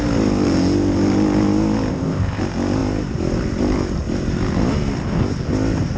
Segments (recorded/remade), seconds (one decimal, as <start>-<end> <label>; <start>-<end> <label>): 0.0-1.9 recorded; 1.9-2.4 remade; 2.4-6.0 recorded